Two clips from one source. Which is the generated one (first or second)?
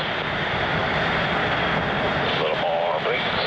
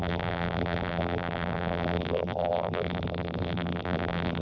second